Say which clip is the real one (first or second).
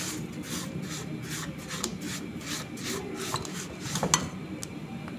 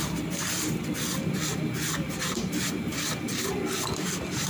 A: first